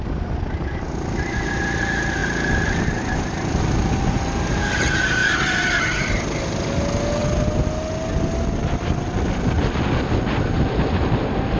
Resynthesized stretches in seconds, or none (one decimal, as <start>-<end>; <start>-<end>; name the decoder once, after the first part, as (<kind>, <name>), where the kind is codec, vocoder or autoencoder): none